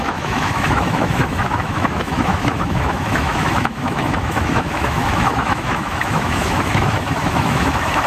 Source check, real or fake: fake